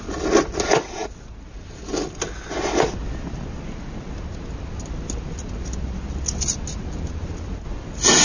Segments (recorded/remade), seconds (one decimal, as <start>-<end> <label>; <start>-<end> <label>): 0.0-8.2 recorded